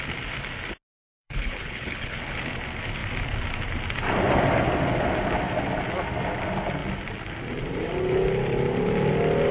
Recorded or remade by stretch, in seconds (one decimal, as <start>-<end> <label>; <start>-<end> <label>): 0.0-1.2 recorded; 1.2-2.2 remade; 2.2-9.5 recorded